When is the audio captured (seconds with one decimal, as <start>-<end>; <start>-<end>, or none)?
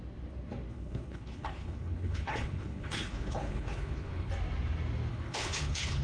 0.0-0.7; 4.3-5.1